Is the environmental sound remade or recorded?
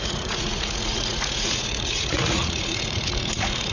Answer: remade